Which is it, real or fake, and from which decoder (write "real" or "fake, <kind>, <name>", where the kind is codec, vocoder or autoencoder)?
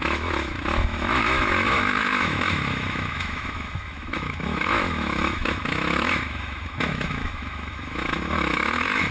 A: fake, autoencoder, DAC-VAE